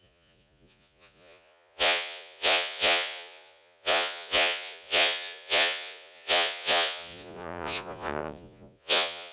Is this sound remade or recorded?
remade